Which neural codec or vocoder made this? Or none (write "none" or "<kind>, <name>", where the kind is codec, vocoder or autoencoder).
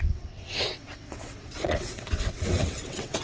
vocoder, WaveNeXt